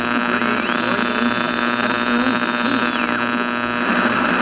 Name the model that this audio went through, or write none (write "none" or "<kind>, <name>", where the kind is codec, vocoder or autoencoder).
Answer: none